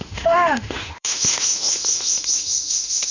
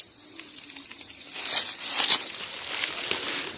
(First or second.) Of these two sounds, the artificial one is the first